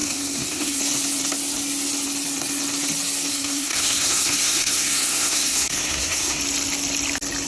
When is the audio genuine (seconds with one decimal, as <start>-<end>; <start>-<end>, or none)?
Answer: 0.8-3.3; 6.4-7.5

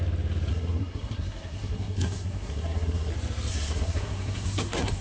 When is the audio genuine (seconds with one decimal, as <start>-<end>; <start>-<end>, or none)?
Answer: 0.0-0.5; 3.1-3.5

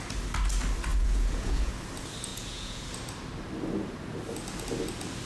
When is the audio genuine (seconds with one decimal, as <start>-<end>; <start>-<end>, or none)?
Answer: 0.0-0.9; 1.7-2.3; 2.9-5.3

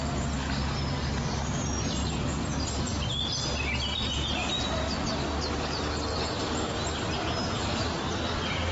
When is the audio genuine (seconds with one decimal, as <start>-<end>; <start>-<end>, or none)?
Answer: 0.0-8.7